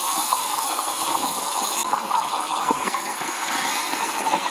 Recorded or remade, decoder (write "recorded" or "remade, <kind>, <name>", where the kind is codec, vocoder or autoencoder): remade, codec, SNAC